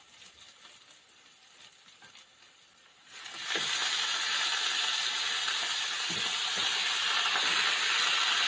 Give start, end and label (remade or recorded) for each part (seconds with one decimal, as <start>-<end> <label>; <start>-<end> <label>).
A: 0.0-8.5 recorded